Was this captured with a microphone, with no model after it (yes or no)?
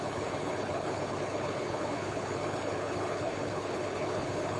no